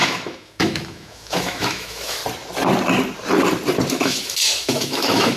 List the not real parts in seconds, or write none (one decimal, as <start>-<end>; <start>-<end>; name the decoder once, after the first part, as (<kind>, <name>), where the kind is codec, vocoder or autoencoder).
0.0-2.2 (autoencoder, DAC-VAE); 3.9-5.4